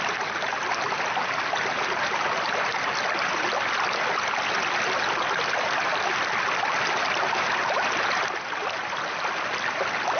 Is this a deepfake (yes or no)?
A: no